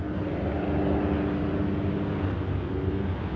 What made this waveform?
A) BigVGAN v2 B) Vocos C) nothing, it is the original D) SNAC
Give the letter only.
C